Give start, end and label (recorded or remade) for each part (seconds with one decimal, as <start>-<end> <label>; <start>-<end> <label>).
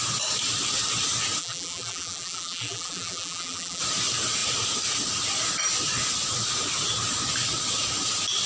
0.0-1.4 recorded; 1.4-3.8 remade; 3.8-8.5 recorded